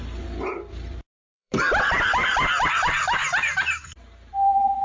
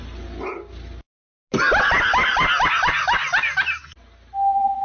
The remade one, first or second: first